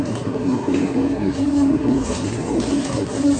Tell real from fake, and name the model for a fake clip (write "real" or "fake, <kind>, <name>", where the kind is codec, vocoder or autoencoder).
fake, codec, SNAC